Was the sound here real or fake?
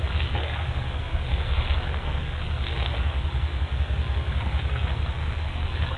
fake